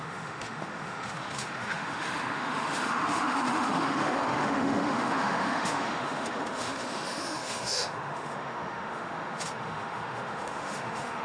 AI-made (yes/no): yes